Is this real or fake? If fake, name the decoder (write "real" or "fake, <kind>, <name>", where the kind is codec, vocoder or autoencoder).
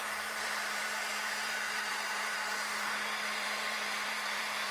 fake, vocoder, BigVGAN v2